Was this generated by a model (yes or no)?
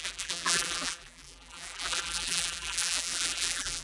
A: yes